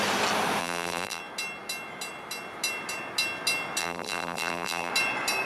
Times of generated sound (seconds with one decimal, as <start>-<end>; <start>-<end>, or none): 0.6-1.2; 3.8-4.9